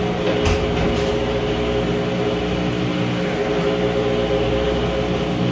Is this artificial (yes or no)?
no